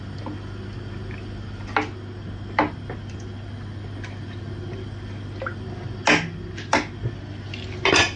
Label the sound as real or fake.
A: real